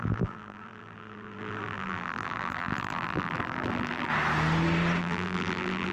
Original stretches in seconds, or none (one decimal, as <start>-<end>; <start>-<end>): 4.1-5.0